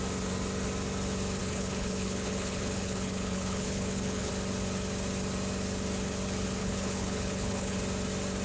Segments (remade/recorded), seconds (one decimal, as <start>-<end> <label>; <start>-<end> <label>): 0.0-1.4 recorded; 1.4-4.3 remade; 4.3-6.6 recorded; 6.6-7.8 remade; 7.8-8.4 recorded